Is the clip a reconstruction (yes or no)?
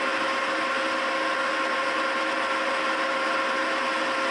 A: no